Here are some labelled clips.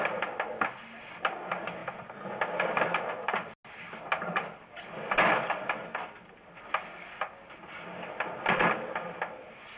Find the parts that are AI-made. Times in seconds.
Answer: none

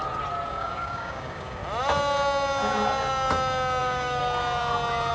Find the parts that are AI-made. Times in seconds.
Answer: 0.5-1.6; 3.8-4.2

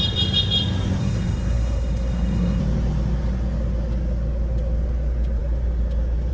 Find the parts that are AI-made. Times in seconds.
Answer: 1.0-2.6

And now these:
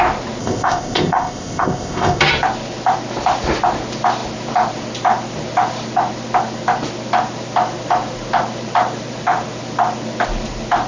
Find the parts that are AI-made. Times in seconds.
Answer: 0.4-2.2

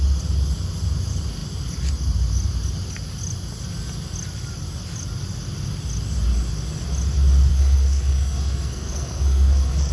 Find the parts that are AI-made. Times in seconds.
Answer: 7.5-9.9

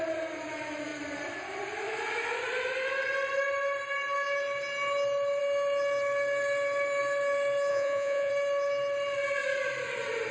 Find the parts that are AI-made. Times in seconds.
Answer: 7.7-8.3